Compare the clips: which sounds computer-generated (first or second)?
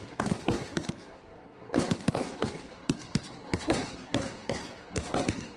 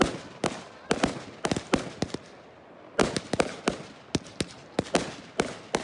first